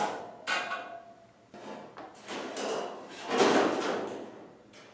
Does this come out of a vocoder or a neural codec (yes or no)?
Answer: no